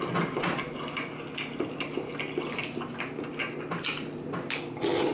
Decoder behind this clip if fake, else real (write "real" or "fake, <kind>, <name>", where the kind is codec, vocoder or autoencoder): real